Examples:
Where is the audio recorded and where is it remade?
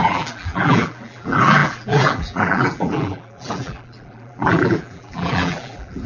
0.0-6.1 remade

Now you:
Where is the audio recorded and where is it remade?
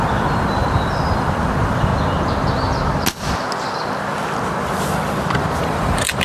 0.0-1.9 remade; 1.9-5.6 recorded; 5.6-6.2 remade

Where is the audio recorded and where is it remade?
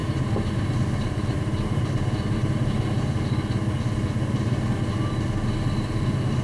0.0-3.2 remade; 3.2-6.4 recorded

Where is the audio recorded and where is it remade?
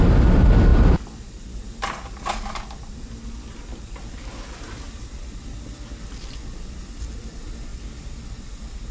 0.0-8.9 recorded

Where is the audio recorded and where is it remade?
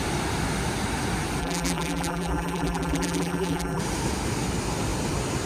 0.0-1.4 recorded; 1.4-3.8 remade; 3.8-5.5 recorded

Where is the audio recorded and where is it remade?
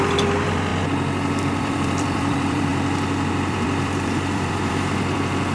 0.0-0.7 remade; 0.7-1.4 recorded; 1.4-2.7 remade; 2.7-3.3 recorded; 3.3-5.5 remade